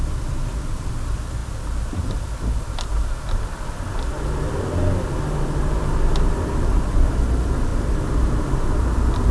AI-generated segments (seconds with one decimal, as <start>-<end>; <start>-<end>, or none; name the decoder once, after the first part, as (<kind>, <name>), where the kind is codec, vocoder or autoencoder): 0.0-1.4 (vocoder, BigVGAN v2); 5.8-7.7